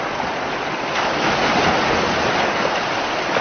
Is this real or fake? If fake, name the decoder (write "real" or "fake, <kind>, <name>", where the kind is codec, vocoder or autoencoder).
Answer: real